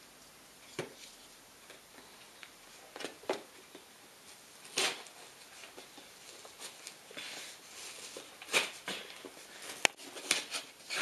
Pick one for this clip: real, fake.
real